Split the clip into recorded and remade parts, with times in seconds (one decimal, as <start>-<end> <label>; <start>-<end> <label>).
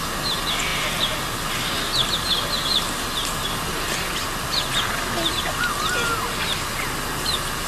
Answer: 0.0-7.7 recorded